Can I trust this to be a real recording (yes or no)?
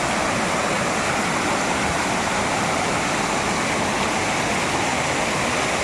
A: yes